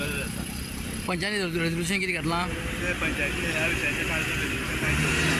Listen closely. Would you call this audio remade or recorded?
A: recorded